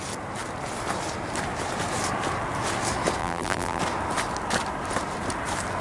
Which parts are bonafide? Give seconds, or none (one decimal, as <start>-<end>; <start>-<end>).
0.0-3.2; 3.8-5.8